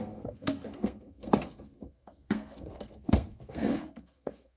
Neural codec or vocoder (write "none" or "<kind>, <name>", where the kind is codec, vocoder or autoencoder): codec, SNAC